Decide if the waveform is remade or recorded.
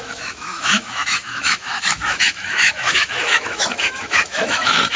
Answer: remade